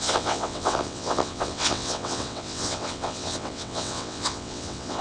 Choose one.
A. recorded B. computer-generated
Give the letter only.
B